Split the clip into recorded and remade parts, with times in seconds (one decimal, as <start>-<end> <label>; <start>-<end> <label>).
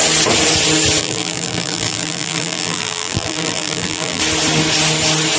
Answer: 0.0-1.0 recorded; 1.0-4.2 remade; 4.2-5.4 recorded